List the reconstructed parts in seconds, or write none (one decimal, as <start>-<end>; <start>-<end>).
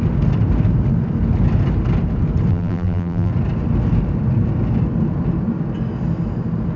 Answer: 2.5-3.3